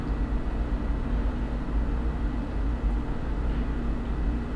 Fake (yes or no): no